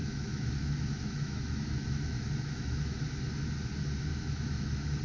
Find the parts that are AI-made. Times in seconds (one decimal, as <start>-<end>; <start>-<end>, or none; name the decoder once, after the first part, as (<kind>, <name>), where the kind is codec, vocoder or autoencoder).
0.0-3.0 (autoencoder, DAC-VAE); 4.1-5.0

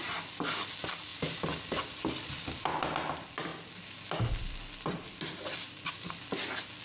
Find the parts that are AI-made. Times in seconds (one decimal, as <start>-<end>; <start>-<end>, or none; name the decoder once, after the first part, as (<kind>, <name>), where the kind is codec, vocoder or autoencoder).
none